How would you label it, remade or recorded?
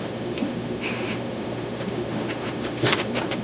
remade